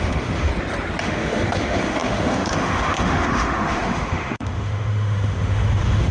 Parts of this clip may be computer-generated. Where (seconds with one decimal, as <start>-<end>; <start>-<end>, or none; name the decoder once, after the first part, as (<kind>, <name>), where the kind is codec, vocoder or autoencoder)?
0.0-0.5 (autoencoder, DAC-VAE); 1.0-6.1

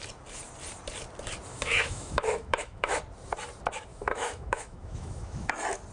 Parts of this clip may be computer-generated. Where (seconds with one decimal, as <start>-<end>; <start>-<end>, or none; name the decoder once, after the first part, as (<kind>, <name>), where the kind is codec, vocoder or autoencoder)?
1.5-3.0 (autoencoder, DAC-VAE); 3.9-5.5

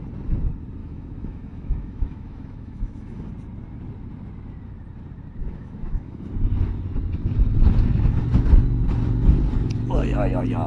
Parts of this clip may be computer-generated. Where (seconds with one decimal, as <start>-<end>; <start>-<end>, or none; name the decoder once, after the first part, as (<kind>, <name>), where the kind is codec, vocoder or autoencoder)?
0.8-3.3 (autoencoder, DAC-VAE); 5.4-6.3

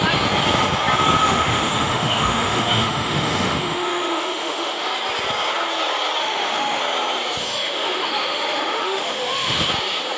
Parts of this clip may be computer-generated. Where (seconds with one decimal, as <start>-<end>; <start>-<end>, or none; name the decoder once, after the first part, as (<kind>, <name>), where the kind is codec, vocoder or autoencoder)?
1.2-4.9 (autoencoder, DAC-VAE); 6.2-6.8; 7.4-9.7

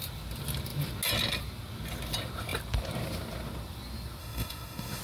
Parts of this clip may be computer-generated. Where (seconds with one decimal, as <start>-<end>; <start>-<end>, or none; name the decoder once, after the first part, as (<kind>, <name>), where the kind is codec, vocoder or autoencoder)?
4.2-5.0 (autoencoder, DAC-VAE)

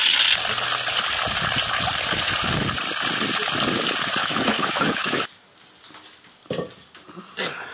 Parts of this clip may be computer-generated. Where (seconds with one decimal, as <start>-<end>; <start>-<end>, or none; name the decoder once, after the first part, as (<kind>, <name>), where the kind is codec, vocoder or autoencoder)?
4.2-5.3 (autoencoder, DAC-VAE)

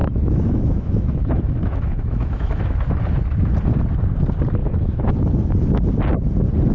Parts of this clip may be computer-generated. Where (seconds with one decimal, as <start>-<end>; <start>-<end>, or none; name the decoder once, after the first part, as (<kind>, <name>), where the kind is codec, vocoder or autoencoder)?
0.0-3.0 (autoencoder, DAC-VAE); 4.6-5.3